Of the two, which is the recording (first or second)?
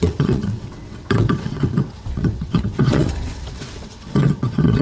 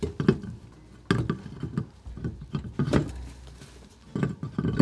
second